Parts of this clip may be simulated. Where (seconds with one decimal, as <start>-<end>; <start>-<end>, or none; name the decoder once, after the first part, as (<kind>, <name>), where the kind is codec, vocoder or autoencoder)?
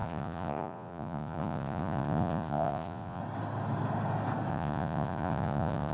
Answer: 0.0-3.2 (vocoder, Vocos); 4.5-5.9